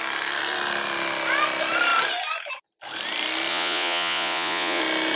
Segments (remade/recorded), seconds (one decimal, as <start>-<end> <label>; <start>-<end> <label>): 0.0-3.5 recorded; 3.5-4.8 remade; 4.8-5.2 recorded